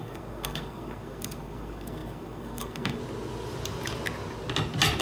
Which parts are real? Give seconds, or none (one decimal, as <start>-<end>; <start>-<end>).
3.0-5.0